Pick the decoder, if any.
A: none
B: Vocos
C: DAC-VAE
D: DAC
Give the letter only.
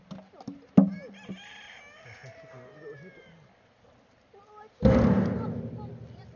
A